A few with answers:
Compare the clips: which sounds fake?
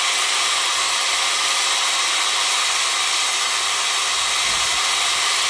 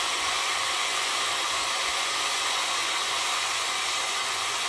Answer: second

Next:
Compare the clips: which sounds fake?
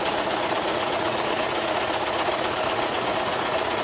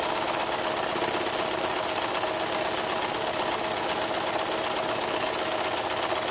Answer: first